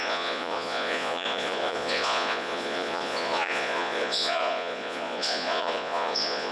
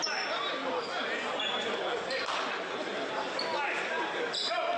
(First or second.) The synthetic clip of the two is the first